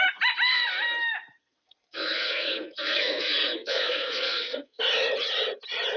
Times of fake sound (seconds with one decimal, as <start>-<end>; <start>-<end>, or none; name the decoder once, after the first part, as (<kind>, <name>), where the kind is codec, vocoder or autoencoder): 1.4-4.8 (codec, SNAC)